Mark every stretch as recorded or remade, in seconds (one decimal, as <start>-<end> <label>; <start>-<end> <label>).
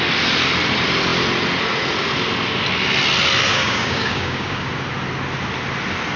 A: 0.0-3.5 recorded; 3.5-4.7 remade; 4.7-6.2 recorded